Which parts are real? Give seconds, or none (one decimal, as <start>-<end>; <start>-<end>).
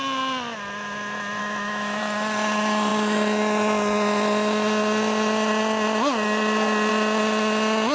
0.0-1.4; 2.0-7.9